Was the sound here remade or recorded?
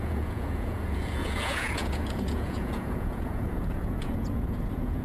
remade